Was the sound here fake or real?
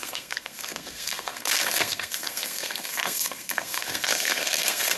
fake